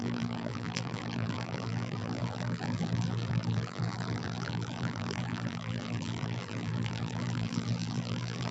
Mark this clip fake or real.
fake